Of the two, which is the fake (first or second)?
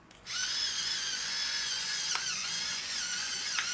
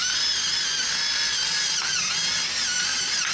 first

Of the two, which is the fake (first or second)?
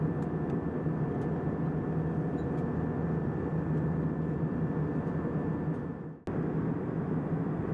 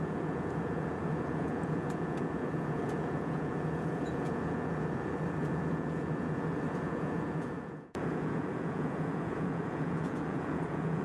second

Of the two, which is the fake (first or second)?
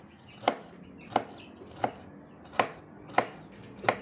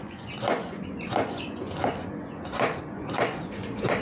second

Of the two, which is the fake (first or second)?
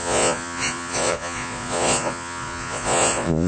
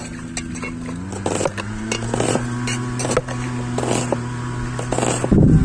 first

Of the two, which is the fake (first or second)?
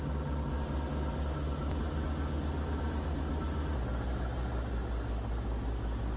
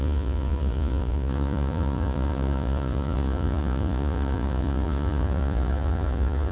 second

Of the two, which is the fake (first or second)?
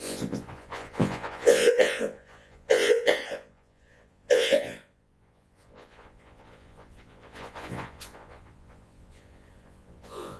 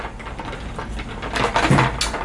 first